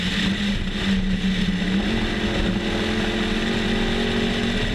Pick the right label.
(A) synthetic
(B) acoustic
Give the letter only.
B